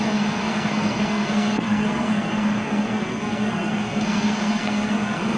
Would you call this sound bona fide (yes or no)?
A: no